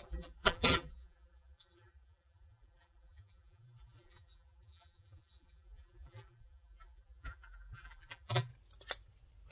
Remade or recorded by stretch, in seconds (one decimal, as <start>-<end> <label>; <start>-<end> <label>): 0.0-8.5 remade; 8.5-9.5 recorded